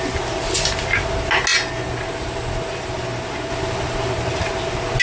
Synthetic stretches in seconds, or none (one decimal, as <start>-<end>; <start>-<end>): none